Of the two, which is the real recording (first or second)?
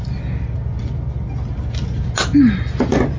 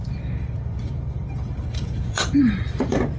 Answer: first